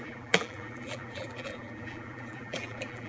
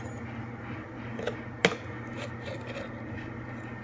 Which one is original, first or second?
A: second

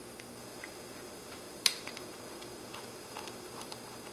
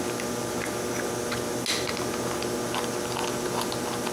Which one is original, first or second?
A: second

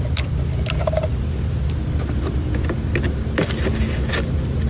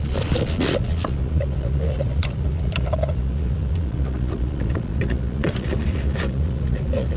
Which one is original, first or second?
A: first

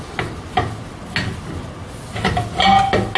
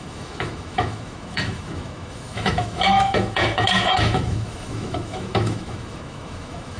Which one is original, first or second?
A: first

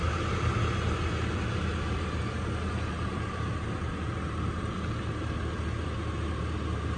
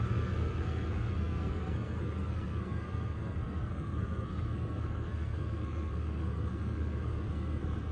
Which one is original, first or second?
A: first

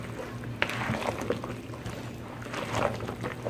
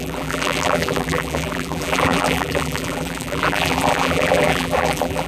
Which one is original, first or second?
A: first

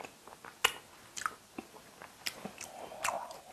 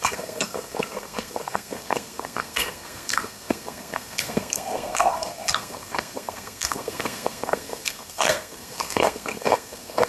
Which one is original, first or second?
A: first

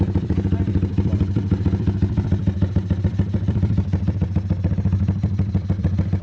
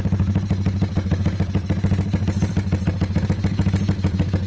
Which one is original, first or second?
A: second